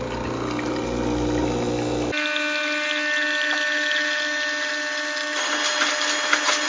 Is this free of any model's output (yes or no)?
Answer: yes